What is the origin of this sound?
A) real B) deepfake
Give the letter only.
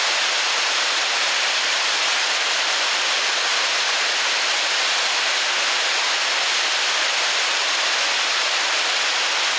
A